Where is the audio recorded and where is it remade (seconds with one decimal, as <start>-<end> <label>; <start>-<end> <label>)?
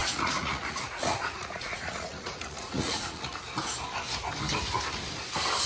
0.0-3.4 remade; 3.4-5.7 recorded